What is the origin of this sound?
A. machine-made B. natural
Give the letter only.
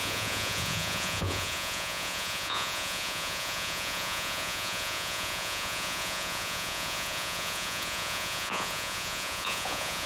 A